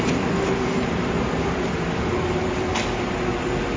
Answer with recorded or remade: recorded